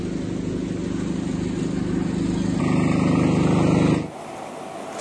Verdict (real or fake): real